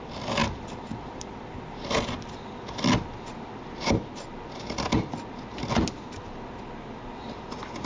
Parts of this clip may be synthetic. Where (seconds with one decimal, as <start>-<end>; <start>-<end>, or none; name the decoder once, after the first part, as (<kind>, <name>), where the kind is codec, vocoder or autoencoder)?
0.4-2.8 (vocoder, BigVGAN v2)